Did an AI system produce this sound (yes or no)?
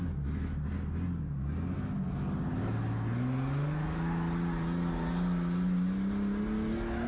no